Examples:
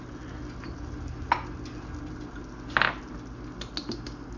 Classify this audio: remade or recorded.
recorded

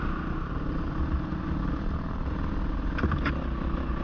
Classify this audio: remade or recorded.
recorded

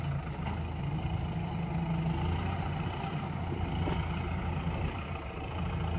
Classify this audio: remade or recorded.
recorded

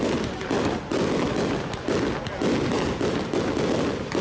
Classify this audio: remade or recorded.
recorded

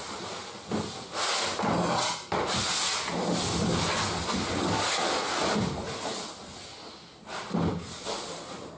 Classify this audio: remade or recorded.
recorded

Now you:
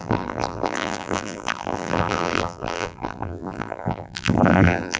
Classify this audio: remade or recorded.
remade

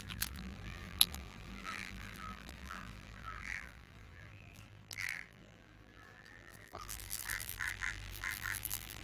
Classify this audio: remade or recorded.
remade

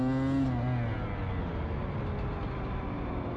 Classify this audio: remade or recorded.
recorded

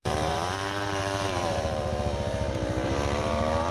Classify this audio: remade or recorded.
remade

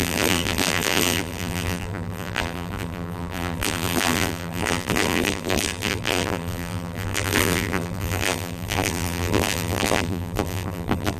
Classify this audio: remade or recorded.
remade